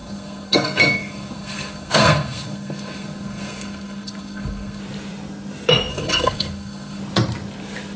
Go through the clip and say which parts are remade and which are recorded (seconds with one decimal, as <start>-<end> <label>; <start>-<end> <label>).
0.0-4.8 remade; 4.8-5.9 recorded; 5.9-7.0 remade; 7.0-8.0 recorded